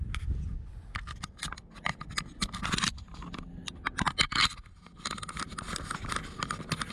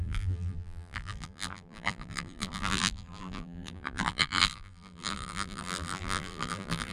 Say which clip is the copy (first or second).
second